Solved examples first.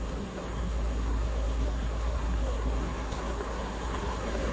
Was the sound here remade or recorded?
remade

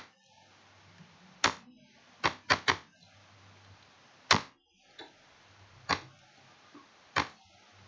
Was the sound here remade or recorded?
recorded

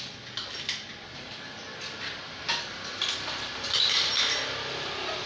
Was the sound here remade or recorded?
recorded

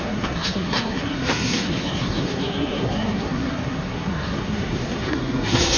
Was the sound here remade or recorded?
remade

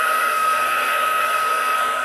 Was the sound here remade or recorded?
remade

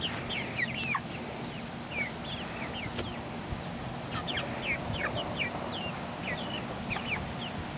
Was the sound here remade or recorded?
recorded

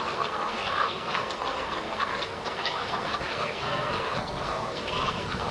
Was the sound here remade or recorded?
remade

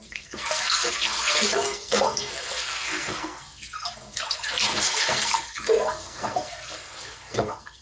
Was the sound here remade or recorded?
remade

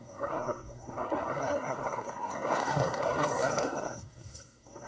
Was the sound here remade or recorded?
remade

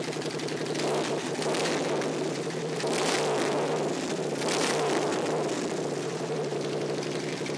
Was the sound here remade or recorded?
recorded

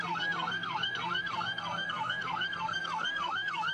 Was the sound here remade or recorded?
remade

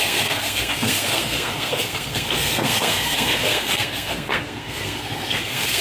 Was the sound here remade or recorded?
remade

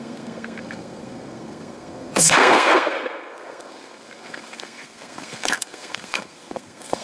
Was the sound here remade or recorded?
remade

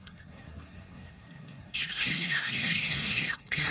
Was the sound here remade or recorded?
remade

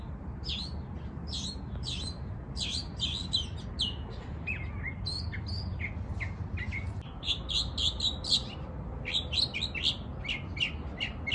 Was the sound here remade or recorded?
recorded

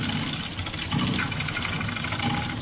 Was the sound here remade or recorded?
recorded